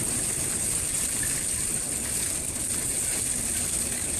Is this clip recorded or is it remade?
recorded